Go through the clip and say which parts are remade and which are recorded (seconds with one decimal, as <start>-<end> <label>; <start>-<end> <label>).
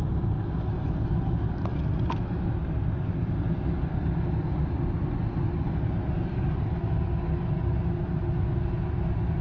0.0-9.4 recorded